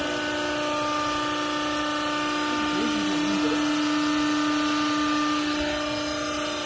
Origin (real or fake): real